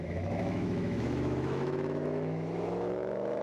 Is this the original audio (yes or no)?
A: no